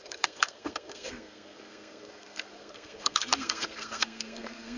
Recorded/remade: remade